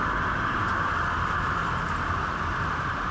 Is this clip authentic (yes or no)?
yes